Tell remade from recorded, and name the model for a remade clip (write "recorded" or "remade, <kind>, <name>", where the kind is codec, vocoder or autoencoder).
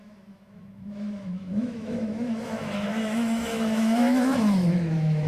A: remade, autoencoder, DAC-VAE